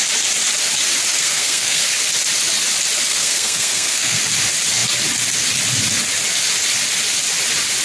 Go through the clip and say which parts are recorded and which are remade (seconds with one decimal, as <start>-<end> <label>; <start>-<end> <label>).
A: 0.0-1.1 recorded; 1.1-1.8 remade; 1.8-3.1 recorded; 3.1-4.2 remade; 4.2-7.8 recorded